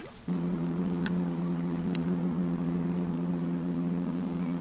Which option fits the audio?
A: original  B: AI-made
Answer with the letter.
B